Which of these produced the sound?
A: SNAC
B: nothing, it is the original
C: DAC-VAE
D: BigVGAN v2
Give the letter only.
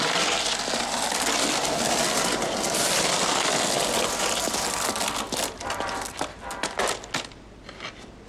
B